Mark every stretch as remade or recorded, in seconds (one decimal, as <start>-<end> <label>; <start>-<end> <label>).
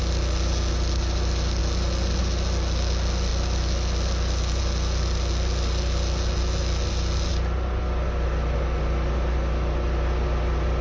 0.0-10.8 recorded